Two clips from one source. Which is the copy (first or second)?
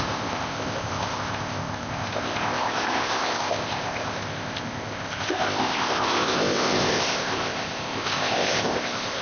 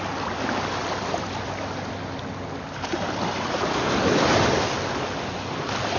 first